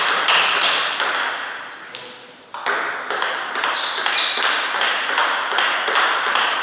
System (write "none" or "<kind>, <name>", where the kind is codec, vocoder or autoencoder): none